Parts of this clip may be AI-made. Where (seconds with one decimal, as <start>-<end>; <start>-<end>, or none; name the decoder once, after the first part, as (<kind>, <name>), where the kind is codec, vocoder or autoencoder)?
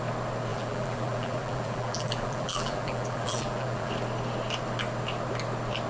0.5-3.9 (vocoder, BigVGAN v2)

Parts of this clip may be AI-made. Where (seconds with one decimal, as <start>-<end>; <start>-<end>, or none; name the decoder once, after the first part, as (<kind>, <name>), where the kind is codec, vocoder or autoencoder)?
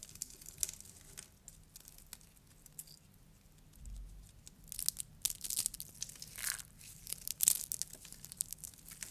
none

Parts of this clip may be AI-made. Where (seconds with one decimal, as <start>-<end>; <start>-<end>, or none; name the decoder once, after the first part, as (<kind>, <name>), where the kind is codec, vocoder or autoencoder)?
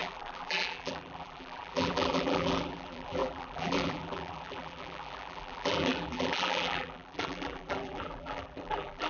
0.0-9.1 (vocoder, BigVGAN v2)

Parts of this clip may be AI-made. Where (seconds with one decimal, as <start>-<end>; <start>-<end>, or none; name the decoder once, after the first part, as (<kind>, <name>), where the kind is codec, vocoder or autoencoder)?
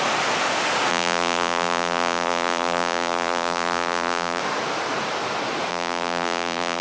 0.9-4.4 (vocoder, BigVGAN v2); 5.7-6.8